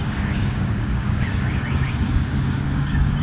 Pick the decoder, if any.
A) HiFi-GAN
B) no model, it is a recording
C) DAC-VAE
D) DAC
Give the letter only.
D